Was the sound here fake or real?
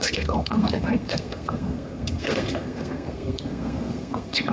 fake